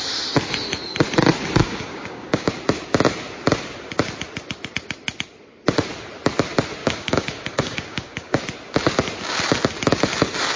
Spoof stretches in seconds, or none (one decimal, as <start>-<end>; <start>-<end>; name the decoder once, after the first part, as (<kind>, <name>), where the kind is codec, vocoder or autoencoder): 1.6-2.5 (codec, DAC); 6.8-8.4